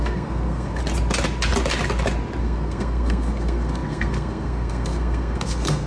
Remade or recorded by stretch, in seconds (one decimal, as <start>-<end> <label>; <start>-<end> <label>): 0.0-0.8 remade; 0.8-2.4 recorded; 2.4-5.9 remade